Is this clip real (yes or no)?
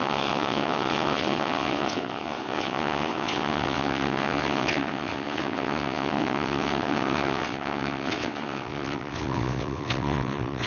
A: no